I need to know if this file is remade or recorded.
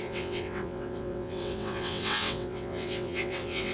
remade